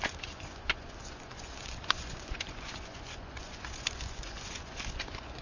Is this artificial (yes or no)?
yes